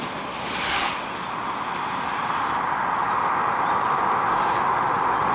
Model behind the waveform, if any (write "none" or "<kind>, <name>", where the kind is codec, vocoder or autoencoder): none